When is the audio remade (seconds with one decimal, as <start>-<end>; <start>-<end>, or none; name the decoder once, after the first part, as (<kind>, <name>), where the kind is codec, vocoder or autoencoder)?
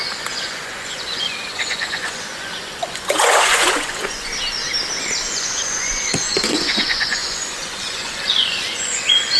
0.0-4.3 (vocoder, Vocos); 5.3-9.4